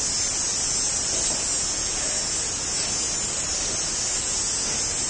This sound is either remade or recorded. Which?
recorded